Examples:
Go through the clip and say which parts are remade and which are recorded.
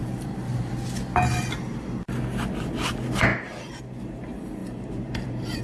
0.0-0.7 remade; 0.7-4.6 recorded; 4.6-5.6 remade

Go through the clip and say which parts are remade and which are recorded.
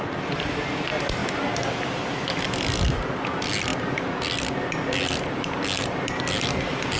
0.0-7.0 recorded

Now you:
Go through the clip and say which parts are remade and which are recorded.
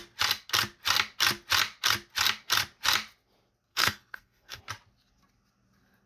0.0-3.7 recorded; 3.7-4.6 remade; 4.6-6.1 recorded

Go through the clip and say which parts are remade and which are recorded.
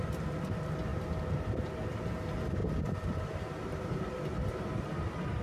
0.0-5.4 recorded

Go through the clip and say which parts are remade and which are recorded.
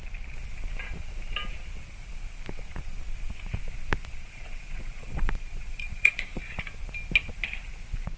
0.0-4.2 recorded; 4.2-6.4 remade; 6.4-8.2 recorded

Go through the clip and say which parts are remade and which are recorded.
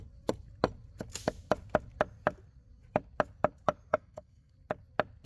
0.0-3.9 recorded; 3.9-4.5 remade; 4.5-5.3 recorded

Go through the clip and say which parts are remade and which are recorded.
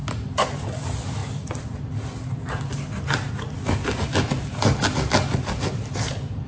0.0-6.5 recorded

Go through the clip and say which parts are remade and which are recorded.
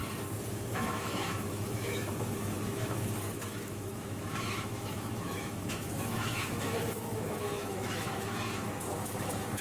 0.0-0.5 recorded; 0.5-9.6 remade